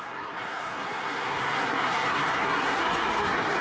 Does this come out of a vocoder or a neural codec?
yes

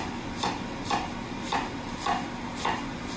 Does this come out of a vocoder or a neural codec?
no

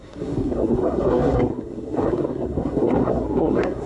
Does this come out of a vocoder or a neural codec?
yes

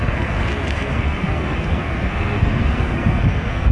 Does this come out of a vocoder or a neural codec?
yes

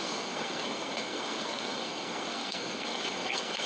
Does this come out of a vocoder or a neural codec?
yes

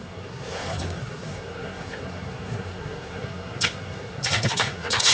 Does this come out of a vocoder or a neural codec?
yes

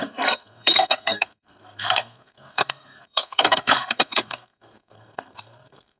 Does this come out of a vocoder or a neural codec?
yes